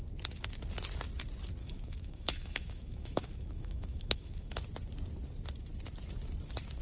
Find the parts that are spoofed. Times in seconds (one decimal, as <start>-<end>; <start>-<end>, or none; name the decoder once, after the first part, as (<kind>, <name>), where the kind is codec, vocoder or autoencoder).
1.6-4.6 (autoencoder, DAC-VAE)